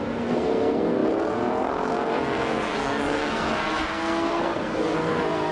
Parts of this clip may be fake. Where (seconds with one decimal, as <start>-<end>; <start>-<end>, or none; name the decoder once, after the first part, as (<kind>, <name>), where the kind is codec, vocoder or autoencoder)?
0.0-5.5 (codec, SNAC)